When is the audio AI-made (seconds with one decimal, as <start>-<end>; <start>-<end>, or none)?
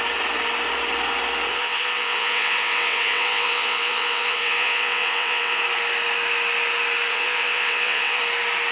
1.5-5.6; 7.1-8.2